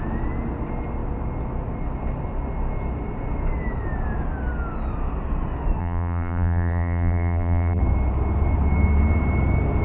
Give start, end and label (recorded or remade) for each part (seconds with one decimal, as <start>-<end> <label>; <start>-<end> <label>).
0.0-5.8 recorded; 5.8-7.8 remade; 7.8-9.8 recorded